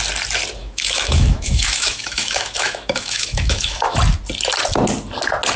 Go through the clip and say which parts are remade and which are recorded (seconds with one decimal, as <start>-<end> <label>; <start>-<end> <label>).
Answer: 0.0-0.6 recorded; 0.6-4.0 remade; 4.0-5.6 recorded

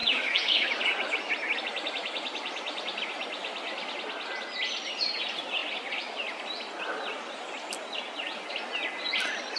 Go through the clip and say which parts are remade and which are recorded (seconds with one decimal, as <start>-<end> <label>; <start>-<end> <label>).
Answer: 0.0-0.7 remade; 0.7-9.6 recorded

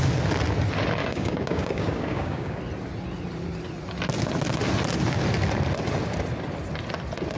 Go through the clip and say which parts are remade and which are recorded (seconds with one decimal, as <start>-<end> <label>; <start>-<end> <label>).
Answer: 0.0-1.0 recorded; 1.0-2.6 remade; 2.6-7.4 recorded

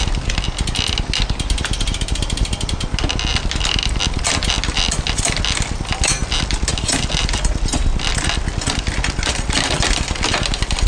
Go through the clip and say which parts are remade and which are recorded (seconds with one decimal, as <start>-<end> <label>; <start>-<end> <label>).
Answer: 0.0-10.9 recorded

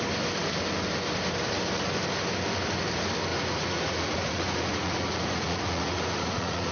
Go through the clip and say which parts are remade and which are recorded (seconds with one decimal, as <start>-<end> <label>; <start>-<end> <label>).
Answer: 0.0-3.3 recorded; 3.3-6.7 remade

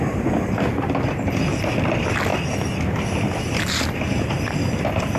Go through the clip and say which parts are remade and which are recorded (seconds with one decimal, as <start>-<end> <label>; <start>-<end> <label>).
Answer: 0.0-5.2 recorded

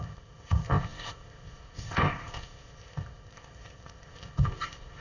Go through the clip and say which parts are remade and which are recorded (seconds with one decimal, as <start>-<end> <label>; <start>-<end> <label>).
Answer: 0.0-5.0 remade

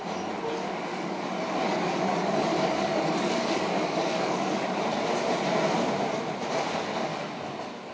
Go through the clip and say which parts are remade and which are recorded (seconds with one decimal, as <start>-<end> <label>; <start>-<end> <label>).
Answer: 0.0-0.9 recorded; 0.9-4.8 remade; 4.8-7.1 recorded; 7.1-7.9 remade